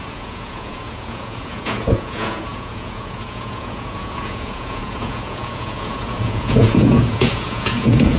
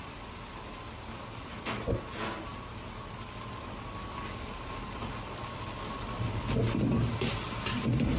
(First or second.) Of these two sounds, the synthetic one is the first